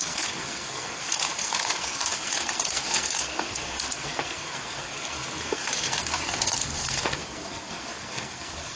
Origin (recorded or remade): remade